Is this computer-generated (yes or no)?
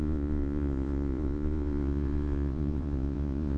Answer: yes